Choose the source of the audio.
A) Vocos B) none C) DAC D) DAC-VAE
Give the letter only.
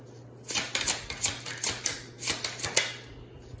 B